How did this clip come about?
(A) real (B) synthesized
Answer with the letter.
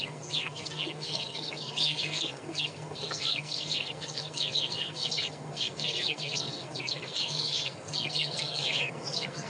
B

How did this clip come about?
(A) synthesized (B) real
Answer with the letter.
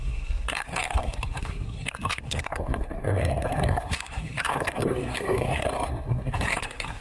A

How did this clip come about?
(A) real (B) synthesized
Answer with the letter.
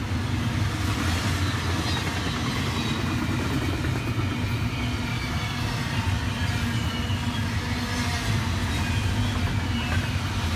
A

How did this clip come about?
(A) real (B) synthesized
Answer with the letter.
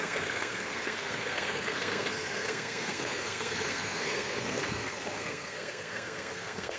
B